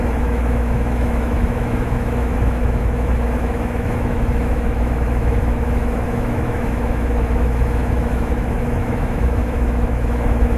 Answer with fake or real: fake